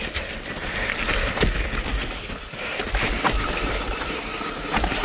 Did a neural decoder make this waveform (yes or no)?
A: no